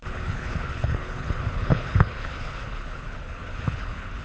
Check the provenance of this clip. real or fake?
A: fake